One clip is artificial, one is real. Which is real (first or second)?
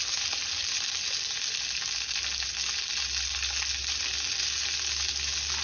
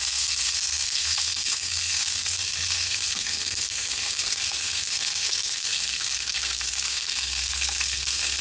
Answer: first